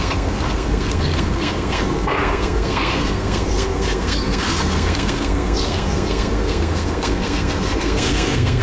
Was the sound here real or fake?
fake